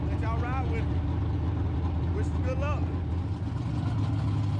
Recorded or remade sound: recorded